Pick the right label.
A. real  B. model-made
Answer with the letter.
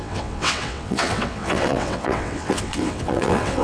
B